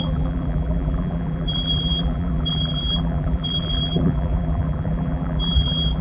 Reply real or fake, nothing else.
fake